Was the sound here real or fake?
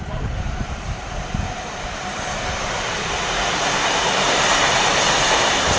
fake